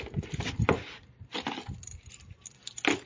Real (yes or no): yes